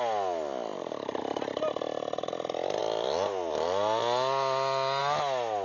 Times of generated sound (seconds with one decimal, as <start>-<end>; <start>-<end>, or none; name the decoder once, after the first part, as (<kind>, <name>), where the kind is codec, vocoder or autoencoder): 0.7-1.2 (vocoder, BigVGAN v2)